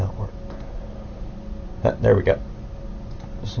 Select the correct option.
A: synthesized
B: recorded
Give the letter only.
B